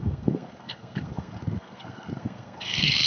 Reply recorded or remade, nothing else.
remade